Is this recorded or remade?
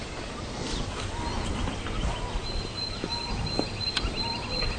recorded